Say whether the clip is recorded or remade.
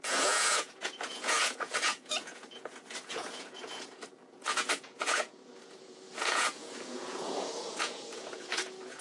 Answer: remade